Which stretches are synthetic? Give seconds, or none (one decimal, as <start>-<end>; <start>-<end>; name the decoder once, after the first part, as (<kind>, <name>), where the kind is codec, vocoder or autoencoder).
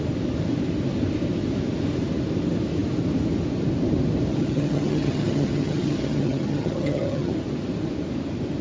4.3-7.3 (vocoder, HiFi-GAN)